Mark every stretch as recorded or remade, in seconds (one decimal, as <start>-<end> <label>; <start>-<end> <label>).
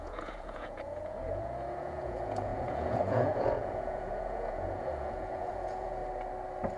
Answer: 0.0-6.0 remade; 6.0-6.8 recorded